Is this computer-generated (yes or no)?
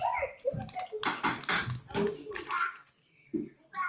no